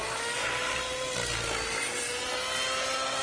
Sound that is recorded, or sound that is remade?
recorded